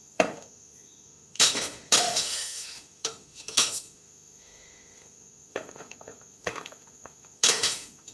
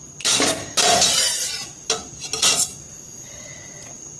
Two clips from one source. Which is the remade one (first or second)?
first